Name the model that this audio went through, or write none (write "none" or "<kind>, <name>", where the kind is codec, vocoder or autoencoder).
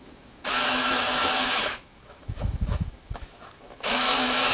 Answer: autoencoder, DAC-VAE